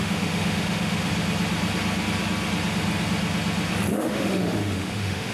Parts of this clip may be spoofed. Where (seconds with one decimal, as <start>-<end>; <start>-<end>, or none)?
0.0-1.1; 3.9-5.3